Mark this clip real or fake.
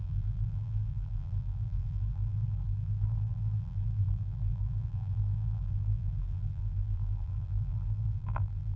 fake